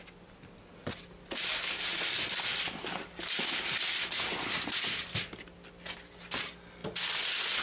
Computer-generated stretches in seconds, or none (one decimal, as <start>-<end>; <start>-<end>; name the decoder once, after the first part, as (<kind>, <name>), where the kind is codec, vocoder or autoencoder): none